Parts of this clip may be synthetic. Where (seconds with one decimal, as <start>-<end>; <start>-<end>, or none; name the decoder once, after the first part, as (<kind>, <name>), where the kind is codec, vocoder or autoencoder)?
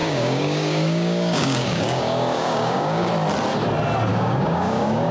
0.0-3.1 (codec, DAC); 4.1-5.1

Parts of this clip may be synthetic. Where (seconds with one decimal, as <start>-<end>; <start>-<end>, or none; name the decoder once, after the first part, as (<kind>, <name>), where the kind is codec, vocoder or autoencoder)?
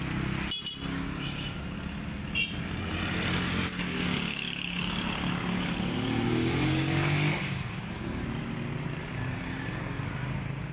0.9-1.6 (codec, DAC); 3.9-8.2; 9.0-10.7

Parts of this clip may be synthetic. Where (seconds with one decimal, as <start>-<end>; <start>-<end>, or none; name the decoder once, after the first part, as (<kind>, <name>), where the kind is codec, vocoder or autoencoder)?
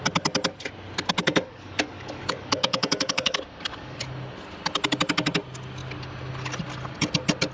1.2-4.0 (codec, DAC)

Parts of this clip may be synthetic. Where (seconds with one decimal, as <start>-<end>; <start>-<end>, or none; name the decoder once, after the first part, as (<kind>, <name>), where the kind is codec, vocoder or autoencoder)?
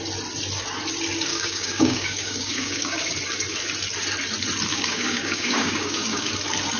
1.3-3.1 (codec, DAC); 4.7-6.3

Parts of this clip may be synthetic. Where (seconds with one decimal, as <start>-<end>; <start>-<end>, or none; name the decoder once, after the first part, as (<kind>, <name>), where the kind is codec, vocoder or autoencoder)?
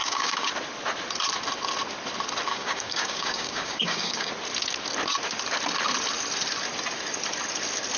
0.0-0.5 (codec, DAC); 2.5-4.3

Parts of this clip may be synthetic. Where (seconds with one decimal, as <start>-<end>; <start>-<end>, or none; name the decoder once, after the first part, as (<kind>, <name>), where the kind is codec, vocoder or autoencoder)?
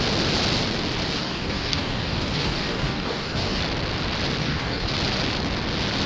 1.2-3.6 (codec, DAC); 4.4-4.9